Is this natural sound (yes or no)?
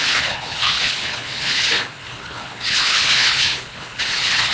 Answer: no